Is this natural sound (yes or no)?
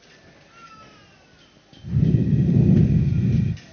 yes